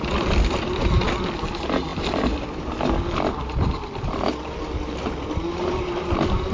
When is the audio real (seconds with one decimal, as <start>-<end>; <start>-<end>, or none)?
0.0-6.5